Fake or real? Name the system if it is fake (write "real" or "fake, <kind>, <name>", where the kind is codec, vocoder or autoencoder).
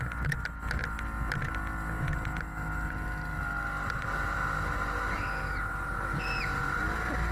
real